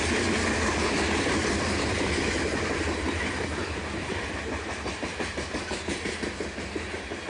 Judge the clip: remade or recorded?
recorded